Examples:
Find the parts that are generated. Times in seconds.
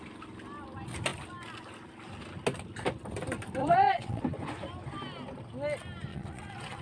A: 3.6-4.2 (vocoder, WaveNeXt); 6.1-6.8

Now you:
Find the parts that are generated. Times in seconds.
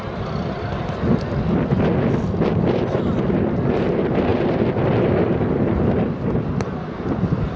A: none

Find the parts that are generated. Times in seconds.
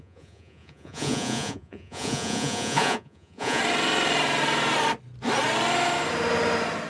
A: 0.0-3.6 (vocoder, Vocos)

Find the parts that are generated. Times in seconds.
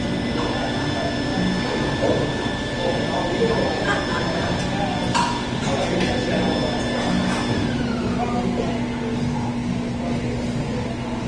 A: none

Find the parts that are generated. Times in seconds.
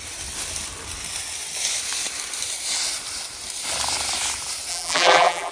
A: 4.7-5.5 (vocoder, BigVGAN v2)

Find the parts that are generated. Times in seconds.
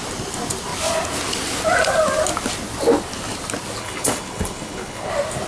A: 3.8-5.1 (codec, HILCodec)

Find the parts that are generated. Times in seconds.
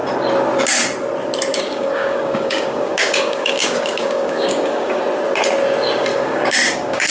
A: 1.5-5.0 (codec, DAC); 6.1-7.1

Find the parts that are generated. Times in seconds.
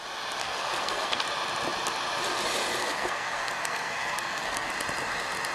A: 0.4-1.2 (codec, SNAC); 2.8-4.7